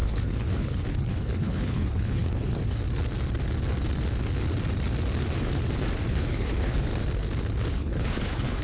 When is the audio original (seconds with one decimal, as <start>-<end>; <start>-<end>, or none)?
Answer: 2.8-6.1; 6.9-7.7